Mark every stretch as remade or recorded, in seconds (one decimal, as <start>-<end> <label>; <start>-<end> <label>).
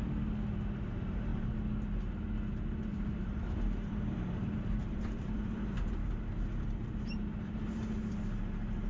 0.0-2.9 recorded; 2.9-8.2 remade; 8.2-8.9 recorded